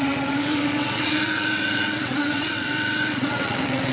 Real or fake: fake